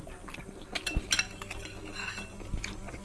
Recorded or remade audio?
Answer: recorded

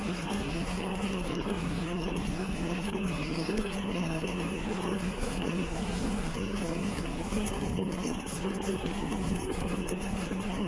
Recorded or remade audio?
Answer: remade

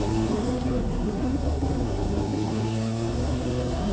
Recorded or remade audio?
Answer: remade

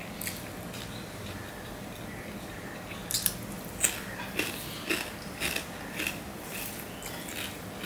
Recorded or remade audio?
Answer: recorded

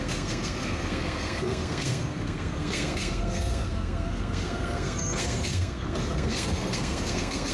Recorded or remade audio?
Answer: remade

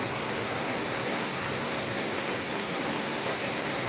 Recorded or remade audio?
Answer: remade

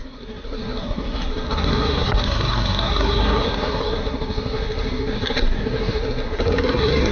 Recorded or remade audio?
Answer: remade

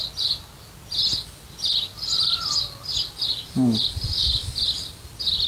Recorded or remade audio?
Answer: recorded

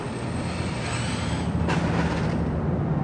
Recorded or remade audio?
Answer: recorded